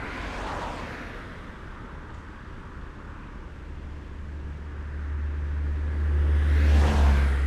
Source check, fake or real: real